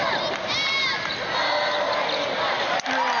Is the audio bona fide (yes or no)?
yes